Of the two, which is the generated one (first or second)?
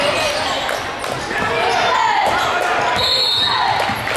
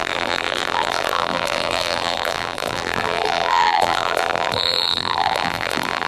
second